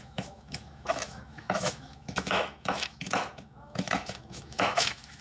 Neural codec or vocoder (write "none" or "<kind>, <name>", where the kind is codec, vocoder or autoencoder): autoencoder, DAC-VAE